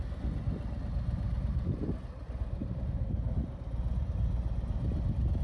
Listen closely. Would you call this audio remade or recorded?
recorded